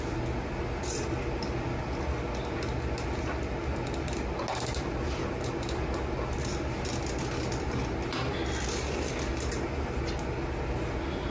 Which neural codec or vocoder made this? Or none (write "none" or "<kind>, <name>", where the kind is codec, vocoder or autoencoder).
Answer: none